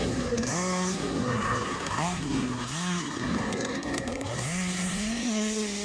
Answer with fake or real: fake